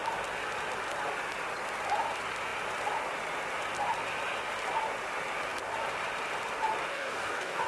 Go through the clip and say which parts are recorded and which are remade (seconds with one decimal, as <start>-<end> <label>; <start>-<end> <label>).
0.0-6.9 recorded; 6.9-7.7 remade